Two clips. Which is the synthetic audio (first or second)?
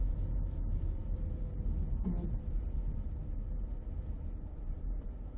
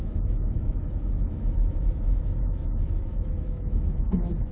second